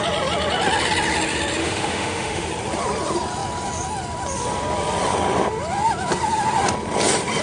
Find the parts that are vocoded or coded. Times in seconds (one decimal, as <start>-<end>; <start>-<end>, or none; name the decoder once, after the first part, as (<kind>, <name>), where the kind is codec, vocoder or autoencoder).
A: 1.6-2.5 (autoencoder, DAC-VAE)